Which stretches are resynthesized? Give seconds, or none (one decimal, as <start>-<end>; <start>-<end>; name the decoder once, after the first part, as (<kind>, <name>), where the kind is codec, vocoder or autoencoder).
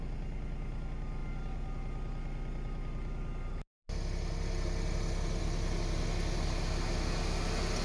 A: none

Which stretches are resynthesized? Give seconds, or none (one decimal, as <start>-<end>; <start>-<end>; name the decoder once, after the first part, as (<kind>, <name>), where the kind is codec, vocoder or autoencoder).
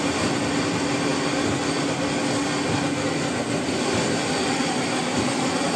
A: none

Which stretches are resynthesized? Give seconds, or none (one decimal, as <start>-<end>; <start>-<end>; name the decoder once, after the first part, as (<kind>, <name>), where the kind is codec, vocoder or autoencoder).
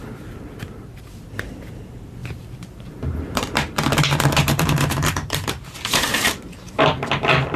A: 2.2-6.8 (vocoder, BigVGAN v2)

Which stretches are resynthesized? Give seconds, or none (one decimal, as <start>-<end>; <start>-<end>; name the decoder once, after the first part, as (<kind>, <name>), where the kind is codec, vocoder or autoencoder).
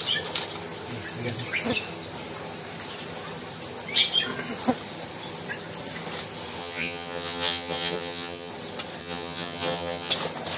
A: 6.6-8.5 (vocoder, HiFi-GAN); 9.0-10.1